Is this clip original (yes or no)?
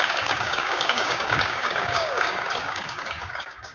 no